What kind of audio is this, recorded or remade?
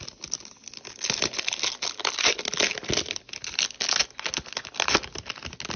recorded